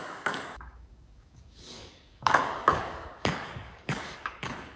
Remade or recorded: remade